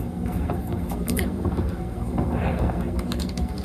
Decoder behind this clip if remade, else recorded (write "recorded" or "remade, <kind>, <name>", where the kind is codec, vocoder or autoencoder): remade, codec, SNAC